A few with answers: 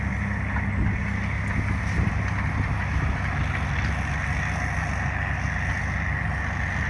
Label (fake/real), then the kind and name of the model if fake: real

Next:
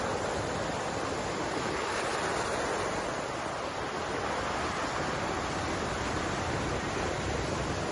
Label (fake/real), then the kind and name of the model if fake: real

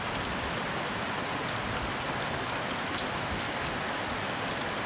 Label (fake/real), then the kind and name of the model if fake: real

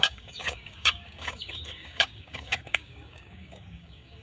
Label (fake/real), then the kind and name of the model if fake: fake, codec, DAC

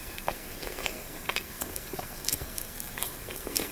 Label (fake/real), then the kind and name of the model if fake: fake, codec, SNAC